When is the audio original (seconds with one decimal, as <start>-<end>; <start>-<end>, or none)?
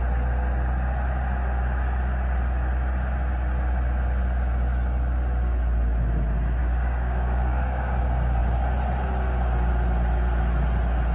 0.0-6.6; 8.0-11.1